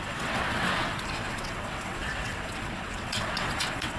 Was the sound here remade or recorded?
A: remade